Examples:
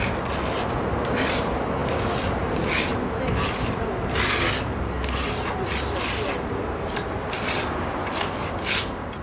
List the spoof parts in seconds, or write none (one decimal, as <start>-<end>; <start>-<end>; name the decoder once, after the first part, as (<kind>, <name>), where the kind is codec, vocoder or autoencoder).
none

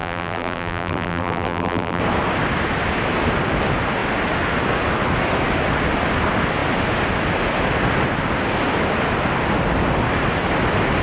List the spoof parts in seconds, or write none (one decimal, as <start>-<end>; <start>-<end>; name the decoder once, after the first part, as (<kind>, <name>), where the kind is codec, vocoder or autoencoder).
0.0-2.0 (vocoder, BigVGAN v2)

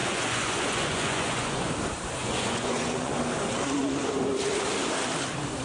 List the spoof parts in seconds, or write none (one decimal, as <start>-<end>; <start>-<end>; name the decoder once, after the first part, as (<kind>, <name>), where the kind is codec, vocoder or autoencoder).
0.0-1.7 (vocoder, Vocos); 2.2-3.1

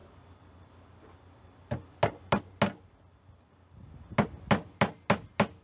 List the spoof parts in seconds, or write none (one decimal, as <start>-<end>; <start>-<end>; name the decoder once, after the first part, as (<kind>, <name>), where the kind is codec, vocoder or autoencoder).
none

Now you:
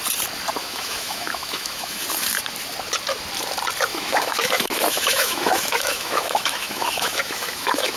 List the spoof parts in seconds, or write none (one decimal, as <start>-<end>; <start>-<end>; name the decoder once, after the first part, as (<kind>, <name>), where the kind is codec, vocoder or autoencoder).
0.6-2.0 (autoencoder, DAC-VAE); 3.9-8.0

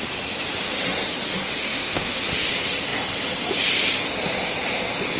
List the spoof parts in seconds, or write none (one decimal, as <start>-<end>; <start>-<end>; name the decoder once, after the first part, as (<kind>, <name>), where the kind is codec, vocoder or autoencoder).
1.6-2.2 (autoencoder, DAC-VAE)